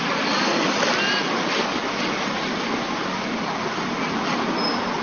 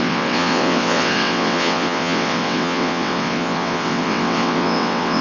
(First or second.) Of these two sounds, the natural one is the first